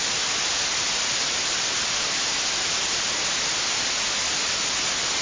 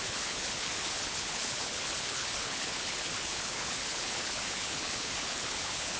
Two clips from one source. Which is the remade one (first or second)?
second